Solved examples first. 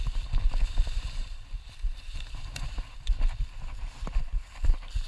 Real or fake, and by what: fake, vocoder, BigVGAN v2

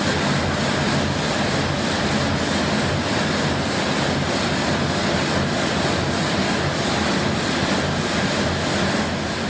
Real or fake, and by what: real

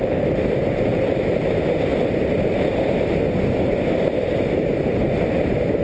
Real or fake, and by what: real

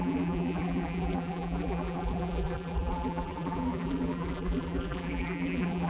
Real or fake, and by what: fake, vocoder, BigVGAN v2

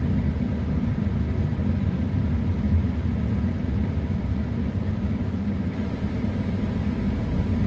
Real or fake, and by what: real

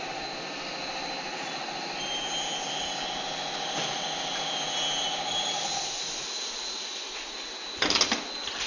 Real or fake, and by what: real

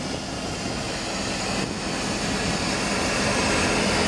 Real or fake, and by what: real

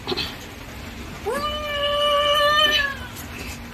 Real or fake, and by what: real